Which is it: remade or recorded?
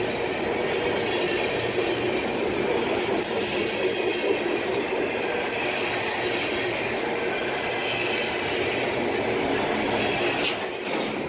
recorded